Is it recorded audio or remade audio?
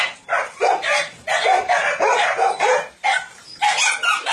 remade